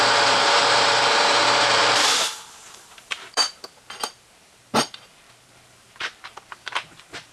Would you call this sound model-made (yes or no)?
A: yes